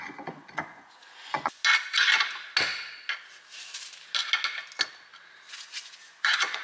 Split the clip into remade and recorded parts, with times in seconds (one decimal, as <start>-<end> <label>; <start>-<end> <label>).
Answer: 0.0-1.6 remade; 1.6-5.5 recorded; 5.5-6.6 remade